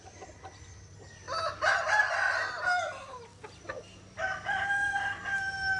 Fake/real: real